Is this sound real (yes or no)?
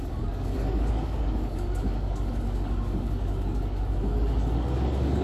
no